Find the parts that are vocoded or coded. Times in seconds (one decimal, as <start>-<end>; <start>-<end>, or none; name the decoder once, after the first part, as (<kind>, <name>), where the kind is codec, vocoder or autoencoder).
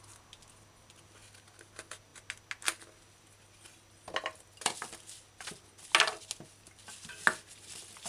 none